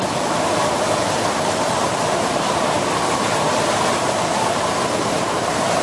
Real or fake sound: fake